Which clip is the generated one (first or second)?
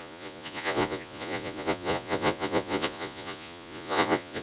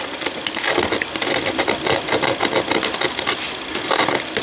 first